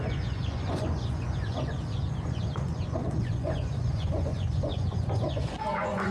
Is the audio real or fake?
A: fake